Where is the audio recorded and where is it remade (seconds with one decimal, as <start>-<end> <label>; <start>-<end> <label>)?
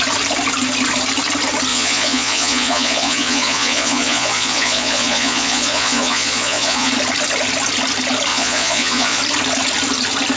0.0-1.7 recorded; 1.7-6.9 remade; 6.9-8.3 recorded; 8.3-9.2 remade; 9.2-10.4 recorded